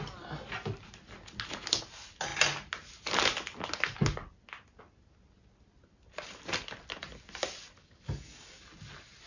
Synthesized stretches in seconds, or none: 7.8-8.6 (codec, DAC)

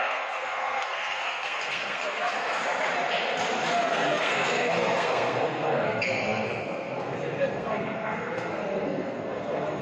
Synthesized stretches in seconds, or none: 0.0-2.6 (codec, SNAC); 3.7-9.8